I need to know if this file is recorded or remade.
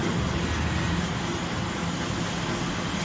recorded